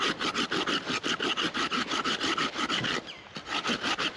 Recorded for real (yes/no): yes